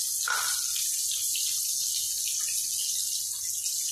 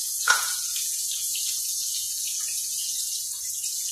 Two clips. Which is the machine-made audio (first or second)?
second